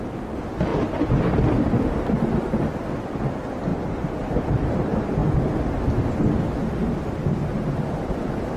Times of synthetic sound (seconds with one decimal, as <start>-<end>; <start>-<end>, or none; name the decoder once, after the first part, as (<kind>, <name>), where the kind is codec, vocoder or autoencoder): none

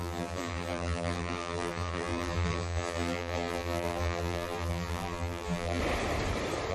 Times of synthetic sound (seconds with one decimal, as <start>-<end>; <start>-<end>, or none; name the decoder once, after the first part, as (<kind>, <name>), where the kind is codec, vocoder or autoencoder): 0.0-5.8 (vocoder, BigVGAN v2)

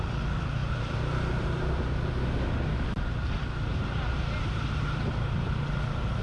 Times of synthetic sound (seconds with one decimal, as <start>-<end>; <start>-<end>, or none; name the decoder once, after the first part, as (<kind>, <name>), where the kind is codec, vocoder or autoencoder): 0.6-1.7 (vocoder, BigVGAN v2); 3.7-5.5